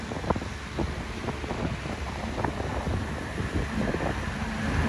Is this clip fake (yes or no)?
no